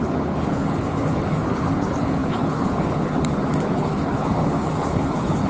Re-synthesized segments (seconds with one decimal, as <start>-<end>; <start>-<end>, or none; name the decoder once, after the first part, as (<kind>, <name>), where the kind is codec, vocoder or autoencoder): 0.0-5.5 (codec, HILCodec)